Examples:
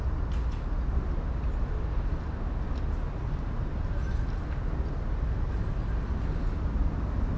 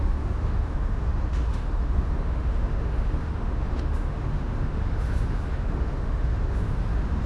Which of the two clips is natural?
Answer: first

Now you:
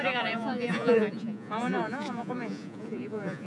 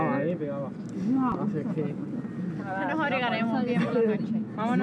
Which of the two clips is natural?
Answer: second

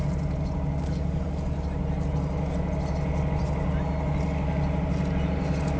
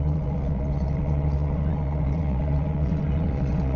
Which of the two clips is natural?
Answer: first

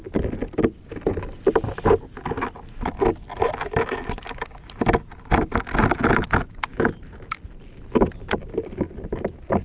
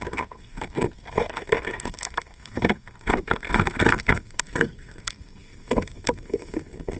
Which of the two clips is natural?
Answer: first